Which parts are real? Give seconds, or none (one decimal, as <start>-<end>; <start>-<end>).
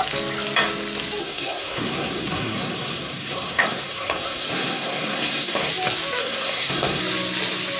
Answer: 0.0-1.2; 5.7-6.2; 7.0-7.8